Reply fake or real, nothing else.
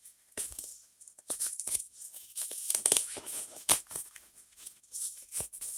fake